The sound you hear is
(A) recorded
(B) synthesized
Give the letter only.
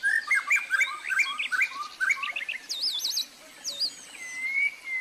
A